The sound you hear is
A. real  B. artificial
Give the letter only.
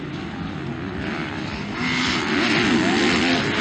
A